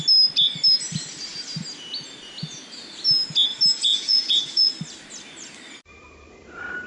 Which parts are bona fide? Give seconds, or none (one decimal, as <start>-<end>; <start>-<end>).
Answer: 0.0-3.8; 4.7-6.9